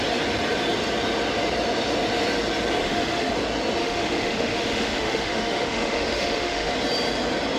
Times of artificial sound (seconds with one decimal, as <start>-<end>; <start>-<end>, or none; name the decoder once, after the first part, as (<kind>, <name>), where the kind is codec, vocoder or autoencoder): 2.8-3.3 (autoencoder, DAC-VAE); 3.8-6.7